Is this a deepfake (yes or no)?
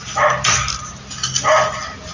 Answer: no